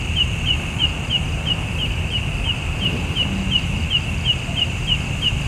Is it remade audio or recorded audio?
remade